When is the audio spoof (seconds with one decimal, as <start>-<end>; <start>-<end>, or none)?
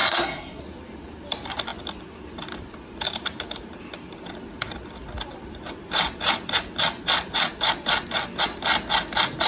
0.0-0.6